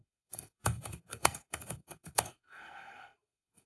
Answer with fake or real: fake